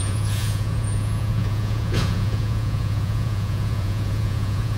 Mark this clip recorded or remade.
remade